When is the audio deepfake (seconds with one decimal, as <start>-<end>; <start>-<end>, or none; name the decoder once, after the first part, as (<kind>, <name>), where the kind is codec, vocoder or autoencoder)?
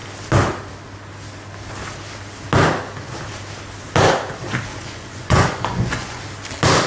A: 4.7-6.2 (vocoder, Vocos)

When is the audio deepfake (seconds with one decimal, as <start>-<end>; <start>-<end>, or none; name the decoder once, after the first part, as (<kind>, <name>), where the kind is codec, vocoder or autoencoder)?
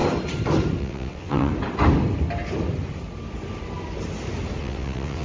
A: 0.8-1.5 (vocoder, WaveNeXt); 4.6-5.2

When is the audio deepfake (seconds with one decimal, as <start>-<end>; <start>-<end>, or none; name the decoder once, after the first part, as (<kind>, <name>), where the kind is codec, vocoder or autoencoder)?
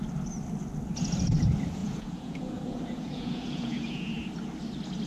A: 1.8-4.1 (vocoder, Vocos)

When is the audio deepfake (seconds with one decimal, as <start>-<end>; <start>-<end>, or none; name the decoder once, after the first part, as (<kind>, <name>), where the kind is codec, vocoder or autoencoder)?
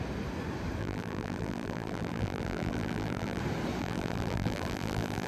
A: 0.8-3.4 (vocoder, BigVGAN v2); 3.8-5.3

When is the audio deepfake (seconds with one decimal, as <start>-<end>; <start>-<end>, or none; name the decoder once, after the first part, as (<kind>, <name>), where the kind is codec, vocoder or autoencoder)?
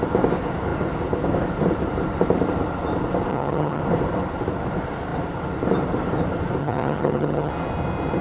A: 3.3-3.8 (vocoder, HiFi-GAN); 6.6-7.5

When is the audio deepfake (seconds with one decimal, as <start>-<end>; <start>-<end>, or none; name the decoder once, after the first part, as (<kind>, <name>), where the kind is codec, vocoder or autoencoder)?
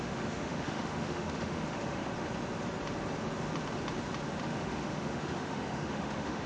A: 0.0-2.1 (autoencoder, DAC-VAE); 4.4-6.5